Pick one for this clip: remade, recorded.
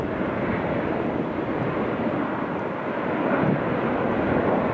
recorded